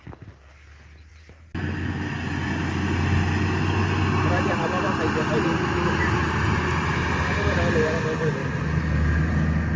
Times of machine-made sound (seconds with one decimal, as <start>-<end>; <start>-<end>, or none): none